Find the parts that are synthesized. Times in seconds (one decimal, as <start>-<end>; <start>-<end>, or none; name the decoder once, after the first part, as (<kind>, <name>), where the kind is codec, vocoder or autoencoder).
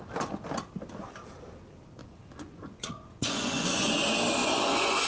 2.0-3.9 (vocoder, Vocos); 4.4-5.1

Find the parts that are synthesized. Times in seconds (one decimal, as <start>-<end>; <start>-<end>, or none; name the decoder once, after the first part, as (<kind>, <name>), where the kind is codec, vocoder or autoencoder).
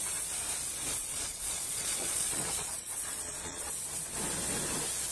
1.0-3.7 (vocoder, Vocos)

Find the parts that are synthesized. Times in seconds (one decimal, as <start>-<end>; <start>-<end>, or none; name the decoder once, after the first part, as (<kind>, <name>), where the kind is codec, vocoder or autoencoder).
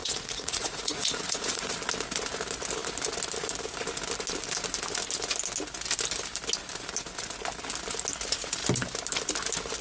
0.0-1.7 (vocoder, Vocos)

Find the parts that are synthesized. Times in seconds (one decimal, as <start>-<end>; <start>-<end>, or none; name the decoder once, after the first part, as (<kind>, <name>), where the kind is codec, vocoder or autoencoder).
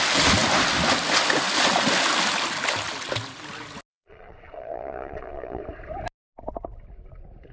3.9-5.6 (vocoder, Vocos)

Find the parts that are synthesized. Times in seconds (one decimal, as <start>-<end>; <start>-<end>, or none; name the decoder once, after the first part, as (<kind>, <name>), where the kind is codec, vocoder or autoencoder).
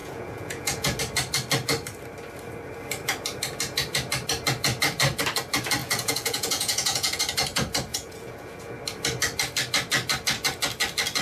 0.0-1.0 (vocoder, Vocos); 5.8-7.2; 7.9-8.8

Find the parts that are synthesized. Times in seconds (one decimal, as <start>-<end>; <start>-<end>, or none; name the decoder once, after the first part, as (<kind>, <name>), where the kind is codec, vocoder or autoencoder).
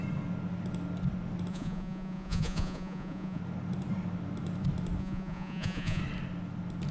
1.5-3.4 (vocoder, Vocos); 5.0-6.0